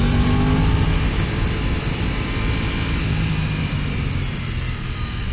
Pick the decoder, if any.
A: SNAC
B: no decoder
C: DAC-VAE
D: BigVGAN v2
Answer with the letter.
D